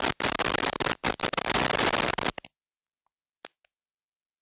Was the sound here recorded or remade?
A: recorded